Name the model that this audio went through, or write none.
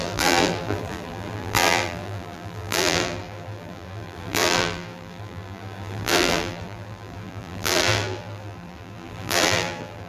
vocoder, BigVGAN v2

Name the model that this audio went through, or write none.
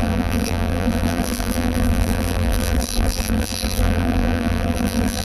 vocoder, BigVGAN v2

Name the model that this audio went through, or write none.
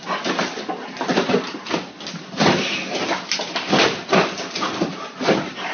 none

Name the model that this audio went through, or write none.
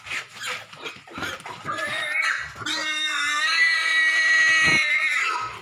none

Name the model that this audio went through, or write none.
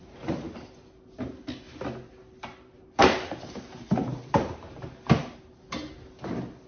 none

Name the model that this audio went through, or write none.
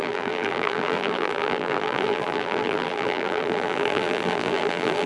vocoder, BigVGAN v2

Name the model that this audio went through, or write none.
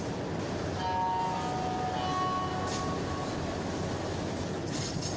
none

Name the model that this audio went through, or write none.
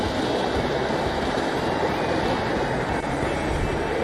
none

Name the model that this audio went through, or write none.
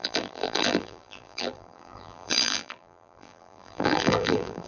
vocoder, BigVGAN v2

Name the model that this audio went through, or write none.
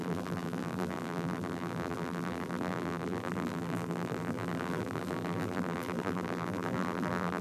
vocoder, BigVGAN v2